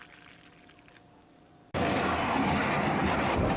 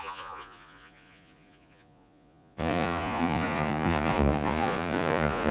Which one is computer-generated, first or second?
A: second